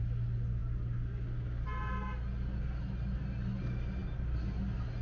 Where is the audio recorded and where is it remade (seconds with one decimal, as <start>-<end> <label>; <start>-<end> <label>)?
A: 0.0-5.0 recorded